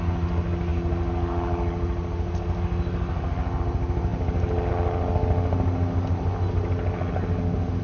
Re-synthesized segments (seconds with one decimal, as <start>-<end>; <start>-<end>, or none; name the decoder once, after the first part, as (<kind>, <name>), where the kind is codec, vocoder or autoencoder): none